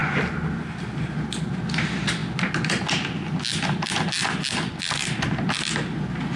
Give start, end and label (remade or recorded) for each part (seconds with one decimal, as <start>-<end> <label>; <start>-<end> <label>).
0.0-6.4 recorded